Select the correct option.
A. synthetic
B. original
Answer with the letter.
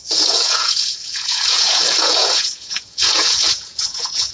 A